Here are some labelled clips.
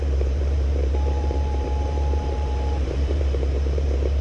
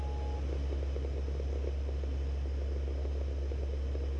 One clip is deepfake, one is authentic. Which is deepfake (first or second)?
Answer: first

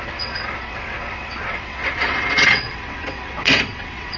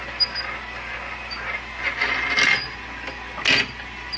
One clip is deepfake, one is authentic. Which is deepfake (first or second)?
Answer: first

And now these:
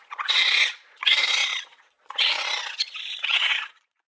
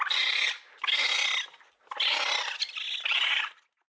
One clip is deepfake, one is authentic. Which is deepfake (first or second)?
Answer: first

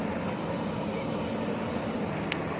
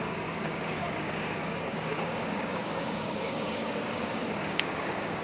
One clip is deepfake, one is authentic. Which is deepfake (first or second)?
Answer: second